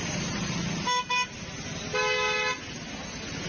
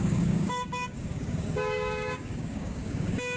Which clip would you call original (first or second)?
first